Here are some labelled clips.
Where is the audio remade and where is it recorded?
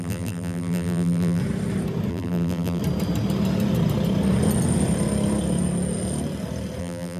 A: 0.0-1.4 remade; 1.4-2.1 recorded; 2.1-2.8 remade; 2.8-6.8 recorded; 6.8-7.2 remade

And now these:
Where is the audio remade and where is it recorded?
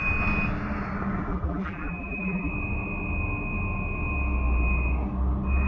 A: 0.0-1.3 recorded; 1.3-2.5 remade; 2.5-5.7 recorded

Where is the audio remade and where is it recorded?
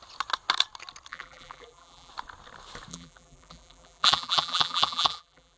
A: 0.0-1.1 recorded; 1.1-2.1 remade; 2.1-2.9 recorded; 2.9-5.6 remade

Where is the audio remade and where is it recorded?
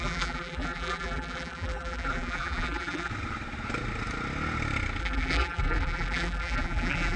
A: 0.0-3.1 remade; 3.1-5.0 recorded; 5.0-7.2 remade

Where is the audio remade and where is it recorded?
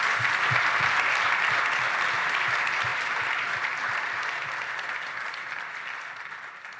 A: 0.0-2.9 recorded; 2.9-6.8 remade